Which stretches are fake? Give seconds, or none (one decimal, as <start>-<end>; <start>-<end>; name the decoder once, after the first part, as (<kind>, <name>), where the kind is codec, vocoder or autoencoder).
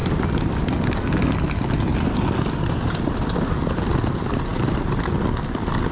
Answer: none